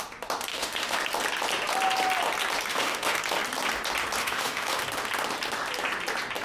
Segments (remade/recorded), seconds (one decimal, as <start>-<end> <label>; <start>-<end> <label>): 0.0-0.5 recorded; 0.5-1.0 remade; 1.0-2.7 recorded; 2.7-3.2 remade; 3.2-4.2 recorded; 4.2-4.8 remade; 4.8-6.4 recorded